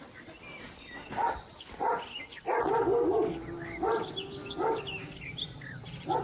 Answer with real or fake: real